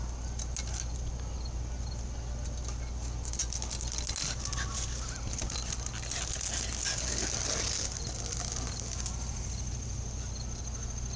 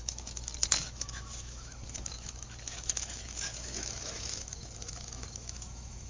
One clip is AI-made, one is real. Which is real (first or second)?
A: first